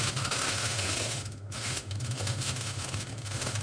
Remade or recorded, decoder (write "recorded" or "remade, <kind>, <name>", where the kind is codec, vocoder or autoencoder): remade, autoencoder, DAC-VAE